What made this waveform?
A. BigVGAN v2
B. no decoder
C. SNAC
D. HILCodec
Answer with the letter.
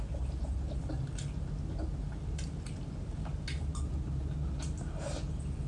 B